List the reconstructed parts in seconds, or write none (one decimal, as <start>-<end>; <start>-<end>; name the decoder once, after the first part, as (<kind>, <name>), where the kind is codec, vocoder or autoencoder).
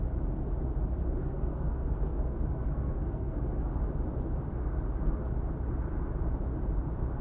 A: 1.2-3.4 (codec, SNAC)